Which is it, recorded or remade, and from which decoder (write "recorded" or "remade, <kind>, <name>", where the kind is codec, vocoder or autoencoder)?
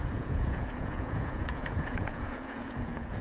remade, vocoder, Vocos